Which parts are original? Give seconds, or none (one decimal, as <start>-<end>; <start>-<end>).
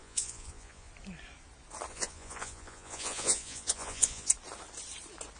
0.9-1.9; 4.3-5.4